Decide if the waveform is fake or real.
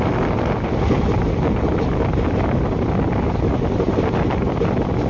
real